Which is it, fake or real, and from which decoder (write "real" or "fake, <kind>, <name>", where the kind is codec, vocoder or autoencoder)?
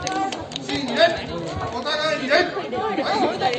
real